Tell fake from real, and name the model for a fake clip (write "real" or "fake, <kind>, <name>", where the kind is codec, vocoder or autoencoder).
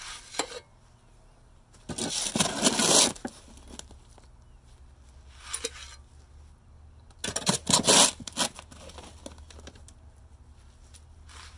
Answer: real